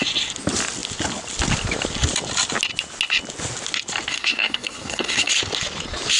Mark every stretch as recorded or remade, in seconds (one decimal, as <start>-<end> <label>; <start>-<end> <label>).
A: 0.0-4.1 recorded; 4.1-5.3 remade; 5.3-6.2 recorded